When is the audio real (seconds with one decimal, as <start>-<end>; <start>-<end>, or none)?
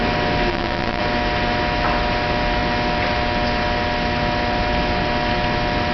0.0-0.5; 1.0-5.9